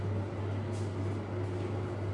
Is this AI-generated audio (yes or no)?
no